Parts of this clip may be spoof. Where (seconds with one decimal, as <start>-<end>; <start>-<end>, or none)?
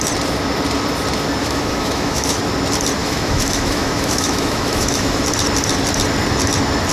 1.4-2.4; 3.0-5.2